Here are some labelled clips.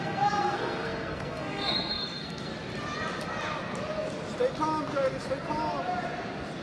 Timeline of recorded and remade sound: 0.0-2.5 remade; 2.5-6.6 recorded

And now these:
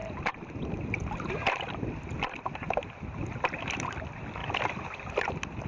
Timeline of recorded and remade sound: 0.0-2.4 remade; 2.4-4.4 recorded; 4.4-5.1 remade; 5.1-5.7 recorded

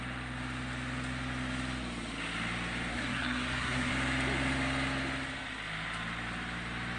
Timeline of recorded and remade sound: 0.0-2.9 recorded; 2.9-3.9 remade; 3.9-7.0 recorded